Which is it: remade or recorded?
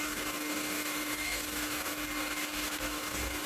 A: remade